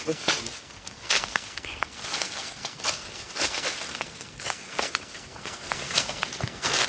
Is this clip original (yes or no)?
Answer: no